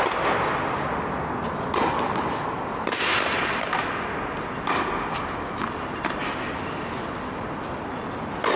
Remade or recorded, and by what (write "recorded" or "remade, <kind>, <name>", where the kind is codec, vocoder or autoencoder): recorded